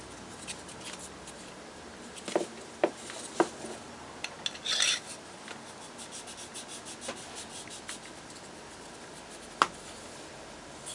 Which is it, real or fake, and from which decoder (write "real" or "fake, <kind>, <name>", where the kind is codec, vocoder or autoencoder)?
real